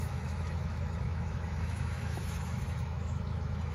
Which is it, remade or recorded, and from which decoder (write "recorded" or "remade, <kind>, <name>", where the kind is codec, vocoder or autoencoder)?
remade, autoencoder, DAC-VAE